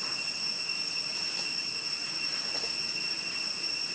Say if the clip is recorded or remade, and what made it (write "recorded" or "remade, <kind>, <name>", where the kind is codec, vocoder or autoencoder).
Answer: recorded